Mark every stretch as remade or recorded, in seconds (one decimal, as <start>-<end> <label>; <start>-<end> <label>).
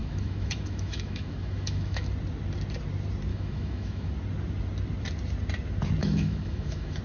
0.0-2.1 remade; 2.1-3.3 recorded; 3.3-4.1 remade; 4.1-6.0 recorded; 6.0-7.0 remade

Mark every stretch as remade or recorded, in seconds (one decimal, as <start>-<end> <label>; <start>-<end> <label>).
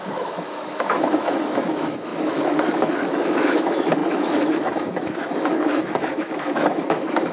0.0-7.3 remade